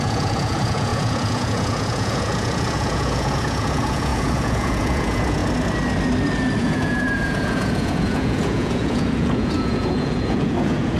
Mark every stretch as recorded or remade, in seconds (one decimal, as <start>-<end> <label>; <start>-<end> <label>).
0.0-5.4 remade; 5.4-6.6 recorded; 6.6-11.0 remade